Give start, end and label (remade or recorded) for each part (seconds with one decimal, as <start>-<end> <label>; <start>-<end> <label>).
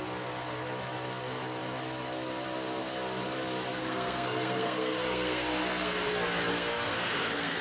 0.0-3.8 recorded; 3.8-6.1 remade; 6.1-6.5 recorded; 6.5-7.6 remade